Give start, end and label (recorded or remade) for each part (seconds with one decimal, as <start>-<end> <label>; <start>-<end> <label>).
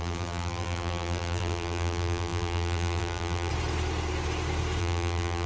0.0-3.5 remade; 3.5-4.8 recorded; 4.8-5.5 remade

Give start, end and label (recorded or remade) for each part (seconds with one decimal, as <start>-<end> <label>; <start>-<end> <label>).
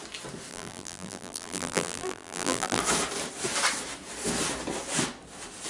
0.0-0.5 recorded; 0.5-2.8 remade; 2.8-5.7 recorded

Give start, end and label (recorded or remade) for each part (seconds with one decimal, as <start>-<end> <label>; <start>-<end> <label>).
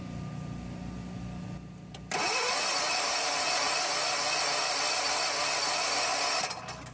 0.0-2.7 recorded; 2.7-3.7 remade; 3.7-6.9 recorded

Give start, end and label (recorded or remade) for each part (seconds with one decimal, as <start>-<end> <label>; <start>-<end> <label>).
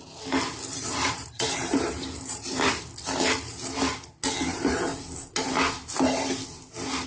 0.0-0.7 recorded; 0.7-2.8 remade; 2.8-4.5 recorded; 4.5-5.0 remade; 5.0-7.1 recorded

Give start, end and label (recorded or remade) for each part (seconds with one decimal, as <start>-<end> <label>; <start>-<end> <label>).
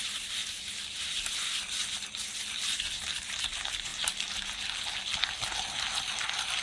0.0-0.4 remade; 0.4-1.9 recorded; 1.9-3.9 remade; 3.9-5.0 recorded; 5.0-6.6 remade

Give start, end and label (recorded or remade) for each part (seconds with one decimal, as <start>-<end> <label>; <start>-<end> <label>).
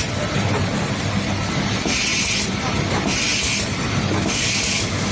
0.0-5.1 recorded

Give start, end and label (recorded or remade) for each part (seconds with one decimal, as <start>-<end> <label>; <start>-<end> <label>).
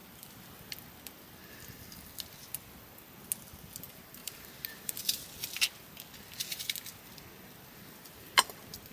0.0-4.2 recorded; 4.2-5.0 remade; 5.0-8.9 recorded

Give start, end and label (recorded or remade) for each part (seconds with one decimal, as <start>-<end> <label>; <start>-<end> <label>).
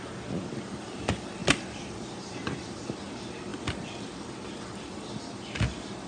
0.0-1.4 recorded; 1.4-3.1 remade; 3.1-3.5 recorded; 3.5-6.1 remade